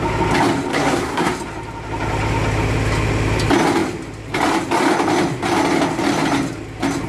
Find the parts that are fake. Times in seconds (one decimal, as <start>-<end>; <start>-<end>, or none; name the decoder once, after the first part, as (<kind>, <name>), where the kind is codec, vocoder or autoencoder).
0.7-1.3 (codec, SNAC)